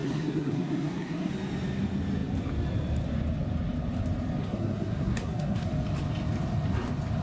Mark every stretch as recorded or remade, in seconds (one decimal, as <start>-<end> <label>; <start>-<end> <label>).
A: 0.0-1.3 remade; 1.3-4.4 recorded; 4.4-5.7 remade; 5.7-7.2 recorded